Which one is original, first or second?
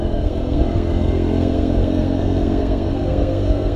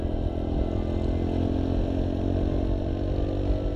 second